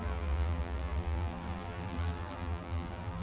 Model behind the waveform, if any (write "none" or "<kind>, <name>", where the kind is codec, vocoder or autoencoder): vocoder, BigVGAN v2